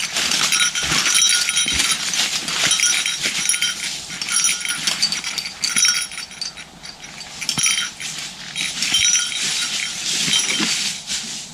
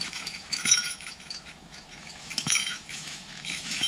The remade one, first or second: second